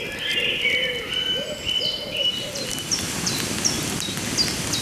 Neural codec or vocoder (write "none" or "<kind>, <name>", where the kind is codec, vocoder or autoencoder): none